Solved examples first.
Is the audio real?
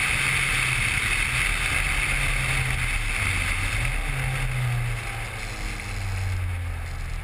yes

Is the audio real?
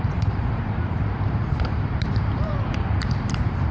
no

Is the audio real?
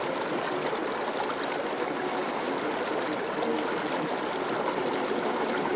yes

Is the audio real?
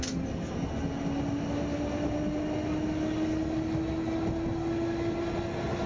yes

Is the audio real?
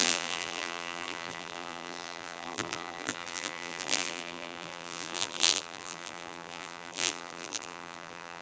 no